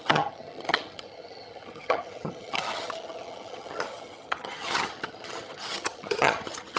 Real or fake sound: fake